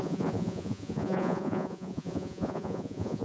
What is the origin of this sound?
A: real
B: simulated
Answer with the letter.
B